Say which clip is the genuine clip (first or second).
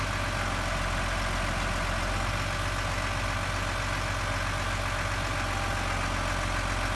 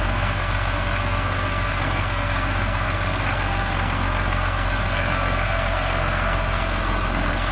first